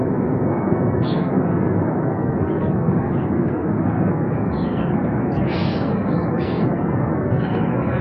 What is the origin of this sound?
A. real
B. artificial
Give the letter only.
B